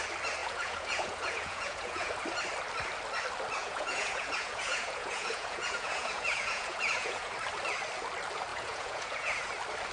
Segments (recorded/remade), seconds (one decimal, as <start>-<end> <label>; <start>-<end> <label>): 0.0-0.4 recorded; 0.4-2.1 remade; 2.1-3.6 recorded; 3.6-7.3 remade; 7.3-8.5 recorded; 8.5-9.5 remade; 9.5-9.9 recorded